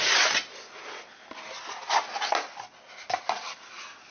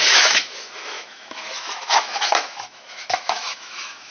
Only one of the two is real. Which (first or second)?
first